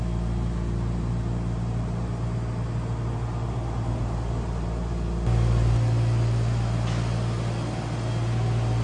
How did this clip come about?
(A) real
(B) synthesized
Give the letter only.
A